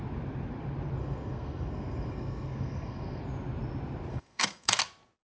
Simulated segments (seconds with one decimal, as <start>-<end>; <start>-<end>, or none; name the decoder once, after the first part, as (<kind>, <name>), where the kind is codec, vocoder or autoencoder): 1.0-3.2 (codec, SNAC); 4.1-4.7